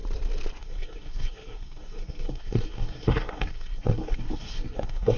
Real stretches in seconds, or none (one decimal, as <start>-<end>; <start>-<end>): 0.0-0.6